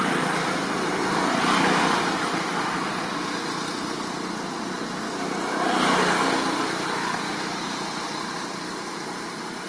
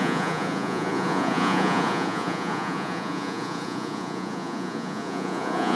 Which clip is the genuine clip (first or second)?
first